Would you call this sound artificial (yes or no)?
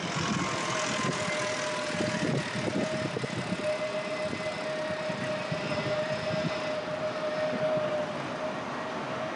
no